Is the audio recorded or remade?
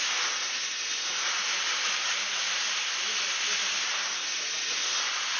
recorded